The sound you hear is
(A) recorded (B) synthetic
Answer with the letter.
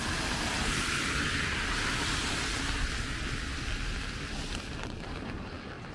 A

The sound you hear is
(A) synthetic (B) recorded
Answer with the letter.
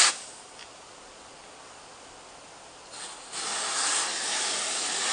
B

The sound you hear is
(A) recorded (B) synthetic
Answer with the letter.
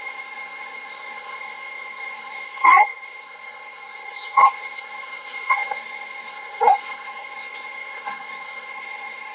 B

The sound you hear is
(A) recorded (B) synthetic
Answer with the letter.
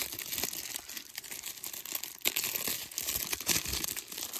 A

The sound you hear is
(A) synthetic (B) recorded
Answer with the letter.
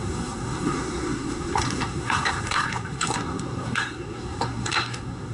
A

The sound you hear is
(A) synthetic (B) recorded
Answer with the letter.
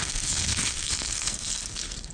A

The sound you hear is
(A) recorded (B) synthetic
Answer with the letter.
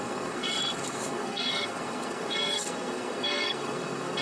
B